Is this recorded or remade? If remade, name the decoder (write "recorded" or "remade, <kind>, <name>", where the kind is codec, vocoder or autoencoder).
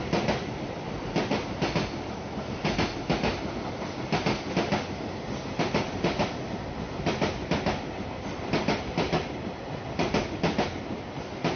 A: recorded